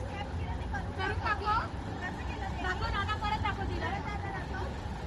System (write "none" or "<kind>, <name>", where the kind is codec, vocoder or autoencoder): none